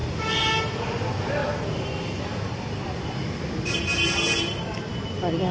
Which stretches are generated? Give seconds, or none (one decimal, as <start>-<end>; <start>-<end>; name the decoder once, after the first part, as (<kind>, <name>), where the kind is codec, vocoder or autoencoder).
none